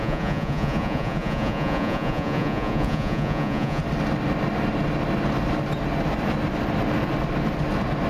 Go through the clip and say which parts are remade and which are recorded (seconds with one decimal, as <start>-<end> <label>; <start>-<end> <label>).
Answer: 0.0-3.8 remade; 3.8-8.1 recorded